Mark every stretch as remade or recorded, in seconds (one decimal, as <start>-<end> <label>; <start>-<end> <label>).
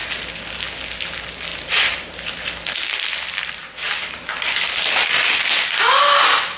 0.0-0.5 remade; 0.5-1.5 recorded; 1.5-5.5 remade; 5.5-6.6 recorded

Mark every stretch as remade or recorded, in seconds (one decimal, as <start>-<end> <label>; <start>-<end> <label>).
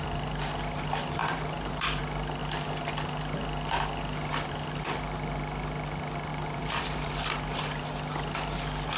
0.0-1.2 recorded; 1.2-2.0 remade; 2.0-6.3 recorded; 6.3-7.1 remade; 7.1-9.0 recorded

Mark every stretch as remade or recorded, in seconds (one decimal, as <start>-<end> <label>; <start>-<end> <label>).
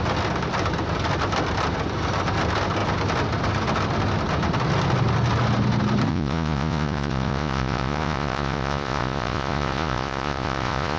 0.0-6.1 recorded; 6.1-11.0 remade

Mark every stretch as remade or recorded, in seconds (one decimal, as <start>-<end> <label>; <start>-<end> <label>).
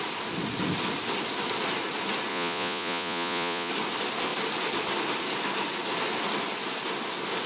0.0-2.3 recorded; 2.3-3.7 remade; 3.7-7.5 recorded